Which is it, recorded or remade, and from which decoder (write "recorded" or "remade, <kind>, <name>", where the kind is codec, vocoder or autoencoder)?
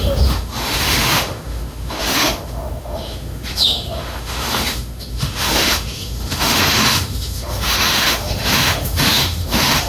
remade, autoencoder, DAC-VAE